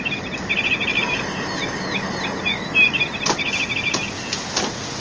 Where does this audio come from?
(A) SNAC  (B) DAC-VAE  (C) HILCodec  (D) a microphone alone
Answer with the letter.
D